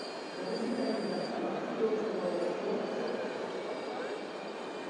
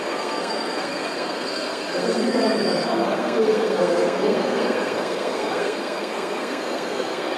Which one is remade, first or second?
second